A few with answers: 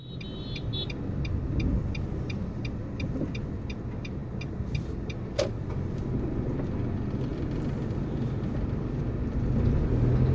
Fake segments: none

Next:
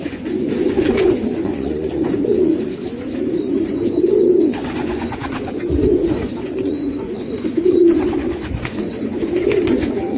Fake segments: 0.0-10.2

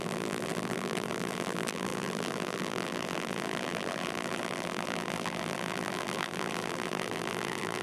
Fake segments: 0.0-7.8